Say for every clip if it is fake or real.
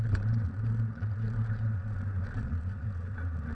fake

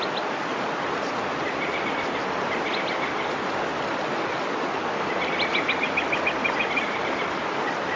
real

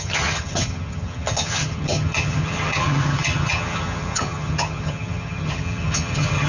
fake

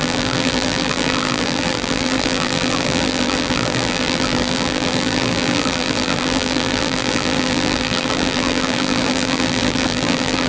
fake